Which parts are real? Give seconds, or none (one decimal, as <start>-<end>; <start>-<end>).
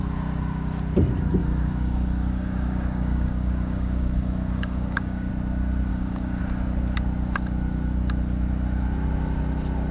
0.0-1.4; 5.3-5.9; 6.4-9.9